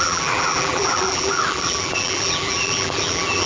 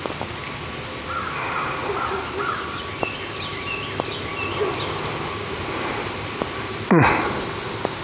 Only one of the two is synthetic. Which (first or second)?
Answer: first